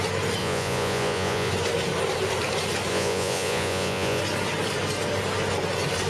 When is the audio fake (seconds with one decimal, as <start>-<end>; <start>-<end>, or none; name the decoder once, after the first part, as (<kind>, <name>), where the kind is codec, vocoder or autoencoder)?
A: 0.4-1.5 (vocoder, Vocos); 2.9-4.2